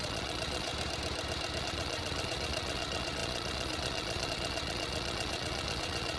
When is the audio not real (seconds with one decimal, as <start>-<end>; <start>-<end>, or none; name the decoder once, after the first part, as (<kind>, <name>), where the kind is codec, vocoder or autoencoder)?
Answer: 0.0-0.7 (vocoder, Vocos); 1.6-6.2